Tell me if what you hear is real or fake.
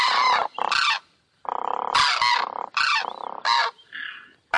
real